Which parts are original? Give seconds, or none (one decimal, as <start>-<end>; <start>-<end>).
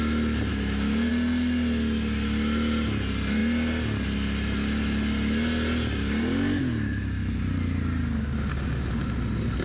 0.0-0.5; 1.1-9.6